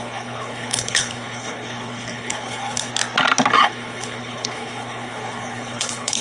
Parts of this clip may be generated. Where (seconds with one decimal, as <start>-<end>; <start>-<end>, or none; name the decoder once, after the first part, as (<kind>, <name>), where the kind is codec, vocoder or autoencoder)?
0.0-2.9 (codec, HILCodec); 3.6-6.2